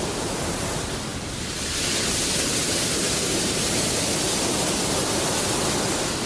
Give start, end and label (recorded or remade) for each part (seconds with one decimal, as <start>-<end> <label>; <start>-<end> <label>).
0.0-2.5 recorded; 2.5-4.4 remade; 4.4-6.3 recorded